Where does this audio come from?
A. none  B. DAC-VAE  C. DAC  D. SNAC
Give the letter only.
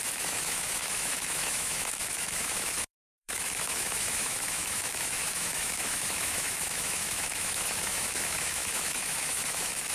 B